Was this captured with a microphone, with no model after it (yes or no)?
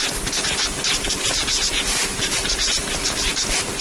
no